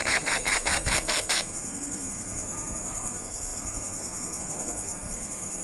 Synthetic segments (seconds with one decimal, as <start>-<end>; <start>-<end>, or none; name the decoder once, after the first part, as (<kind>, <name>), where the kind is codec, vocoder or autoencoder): 0.0-5.6 (codec, SNAC)